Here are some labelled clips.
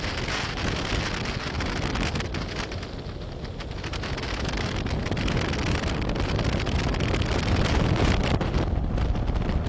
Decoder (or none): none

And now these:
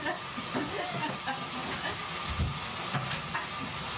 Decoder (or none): none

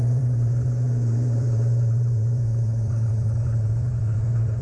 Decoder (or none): vocoder, Vocos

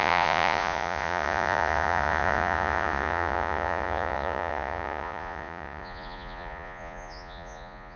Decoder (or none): vocoder, Vocos